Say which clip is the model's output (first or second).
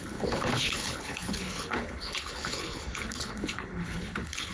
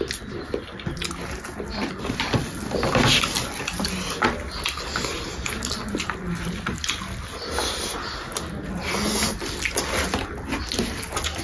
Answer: first